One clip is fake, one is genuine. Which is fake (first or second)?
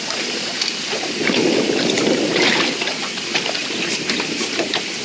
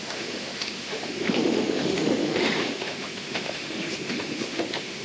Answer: second